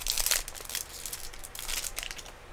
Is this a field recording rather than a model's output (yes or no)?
yes